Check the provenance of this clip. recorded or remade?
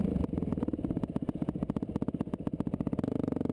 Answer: remade